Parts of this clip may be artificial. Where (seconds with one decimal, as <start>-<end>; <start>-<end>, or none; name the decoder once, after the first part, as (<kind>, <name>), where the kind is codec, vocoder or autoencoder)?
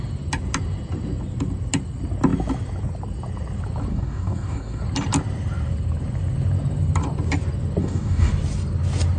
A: 3.9-4.8 (codec, DAC); 7.8-8.3